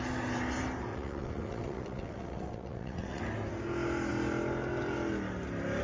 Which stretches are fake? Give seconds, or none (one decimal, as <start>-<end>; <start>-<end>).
0.9-3.2